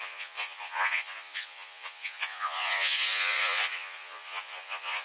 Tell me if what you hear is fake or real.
fake